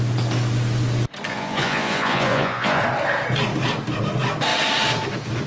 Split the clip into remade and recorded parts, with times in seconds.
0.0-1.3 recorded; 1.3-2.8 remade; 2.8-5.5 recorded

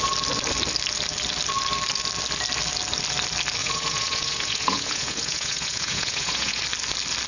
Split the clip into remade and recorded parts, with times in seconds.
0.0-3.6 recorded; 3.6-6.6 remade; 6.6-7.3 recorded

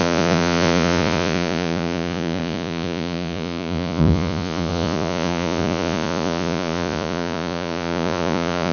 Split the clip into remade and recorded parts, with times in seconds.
0.0-8.7 remade

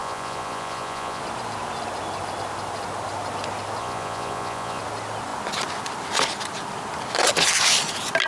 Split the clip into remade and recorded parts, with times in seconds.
0.0-1.2 remade; 1.2-3.8 recorded; 3.8-4.8 remade; 4.8-8.3 recorded